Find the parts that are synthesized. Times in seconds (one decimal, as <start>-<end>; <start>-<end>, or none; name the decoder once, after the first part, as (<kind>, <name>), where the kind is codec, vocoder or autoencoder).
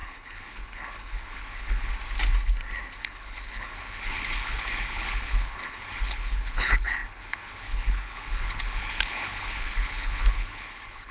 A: 0.0-1.9 (codec, HILCodec); 3.0-11.1